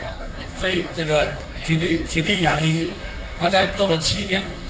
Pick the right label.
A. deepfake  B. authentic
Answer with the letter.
A